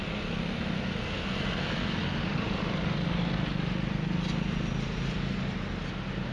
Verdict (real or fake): real